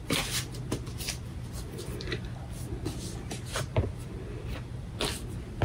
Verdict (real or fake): fake